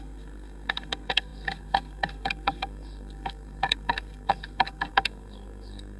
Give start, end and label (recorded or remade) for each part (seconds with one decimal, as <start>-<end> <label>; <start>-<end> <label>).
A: 0.0-6.0 remade

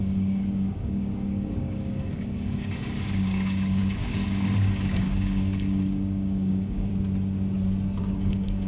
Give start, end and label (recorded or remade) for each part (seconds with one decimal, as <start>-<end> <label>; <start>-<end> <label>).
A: 0.0-6.9 remade; 6.9-8.0 recorded; 8.0-8.7 remade

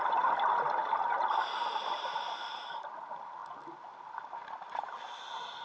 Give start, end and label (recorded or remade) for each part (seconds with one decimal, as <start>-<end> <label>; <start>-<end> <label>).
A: 0.0-5.6 recorded

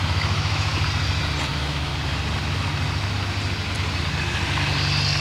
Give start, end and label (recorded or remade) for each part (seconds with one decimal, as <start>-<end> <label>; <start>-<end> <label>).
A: 0.0-0.7 remade; 0.7-1.5 recorded; 1.5-1.9 remade; 1.9-5.2 recorded

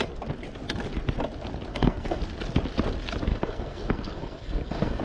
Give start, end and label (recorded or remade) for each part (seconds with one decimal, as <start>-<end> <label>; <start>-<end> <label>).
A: 0.0-1.7 recorded; 1.7-2.2 remade; 2.2-3.3 recorded; 3.3-5.0 remade

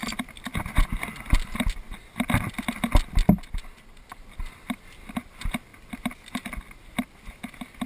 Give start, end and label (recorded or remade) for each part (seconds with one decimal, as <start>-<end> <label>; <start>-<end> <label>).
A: 0.0-7.9 recorded

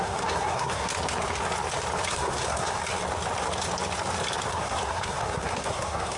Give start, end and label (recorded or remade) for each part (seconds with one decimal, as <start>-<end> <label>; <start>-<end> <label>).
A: 0.0-0.9 remade; 0.9-2.1 recorded; 2.1-2.8 remade; 2.8-4.5 recorded; 4.5-6.2 remade